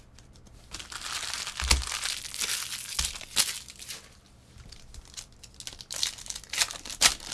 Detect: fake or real real